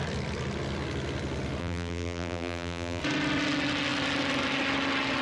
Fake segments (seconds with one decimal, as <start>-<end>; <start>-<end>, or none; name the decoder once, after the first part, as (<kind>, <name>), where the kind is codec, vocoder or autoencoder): 1.6-3.0 (vocoder, BigVGAN v2)